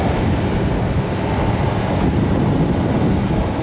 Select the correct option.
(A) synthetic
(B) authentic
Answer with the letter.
B